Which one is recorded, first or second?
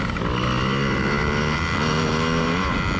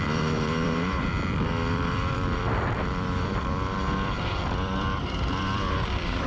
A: first